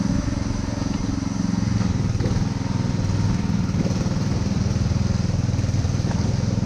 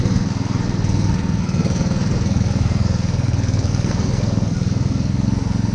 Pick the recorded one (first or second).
first